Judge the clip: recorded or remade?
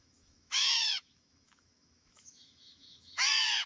remade